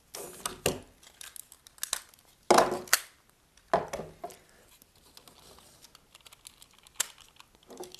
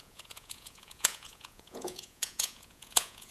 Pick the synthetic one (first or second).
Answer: second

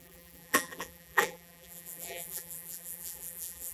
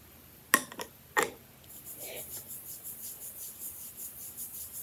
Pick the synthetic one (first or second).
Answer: first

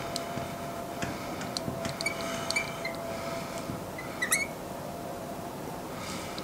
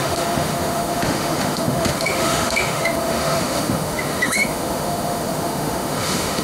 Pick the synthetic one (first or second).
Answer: second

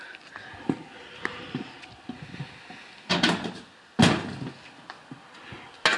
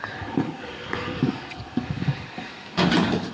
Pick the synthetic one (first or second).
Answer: second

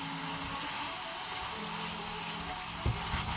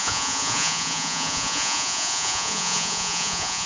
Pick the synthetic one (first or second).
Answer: second